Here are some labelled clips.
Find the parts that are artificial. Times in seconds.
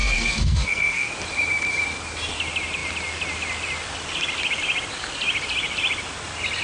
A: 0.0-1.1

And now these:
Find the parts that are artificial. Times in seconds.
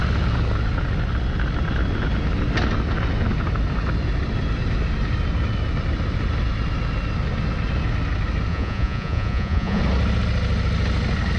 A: 8.5-9.8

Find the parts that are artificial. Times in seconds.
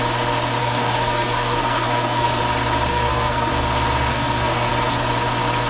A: 0.6-2.4; 2.9-3.5; 4.1-4.7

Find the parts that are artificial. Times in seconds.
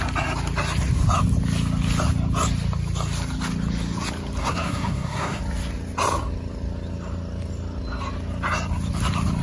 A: 4.4-5.4